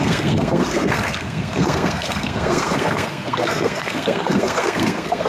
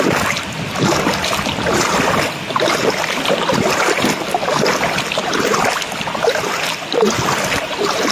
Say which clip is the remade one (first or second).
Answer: first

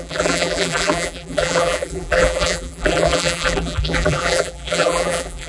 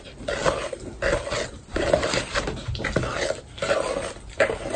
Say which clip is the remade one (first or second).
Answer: first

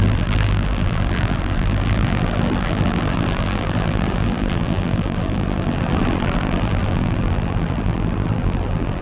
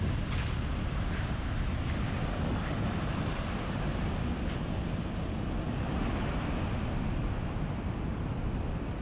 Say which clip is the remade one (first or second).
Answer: first